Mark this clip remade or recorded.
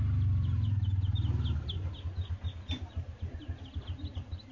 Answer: recorded